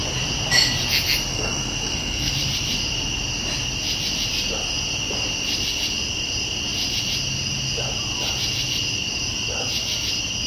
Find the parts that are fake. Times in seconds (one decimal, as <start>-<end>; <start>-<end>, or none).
1.3-2.3